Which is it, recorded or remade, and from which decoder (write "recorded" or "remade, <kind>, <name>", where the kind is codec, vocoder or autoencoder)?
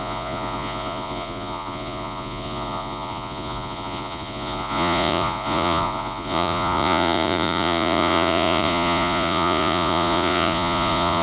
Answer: remade, vocoder, Vocos